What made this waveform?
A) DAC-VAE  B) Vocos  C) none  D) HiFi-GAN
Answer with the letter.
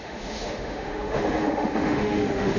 A